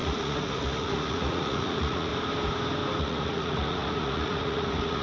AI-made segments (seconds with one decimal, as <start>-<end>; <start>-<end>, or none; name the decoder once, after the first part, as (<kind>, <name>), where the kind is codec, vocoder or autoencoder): 0.0-2.1 (vocoder, Vocos); 3.0-5.0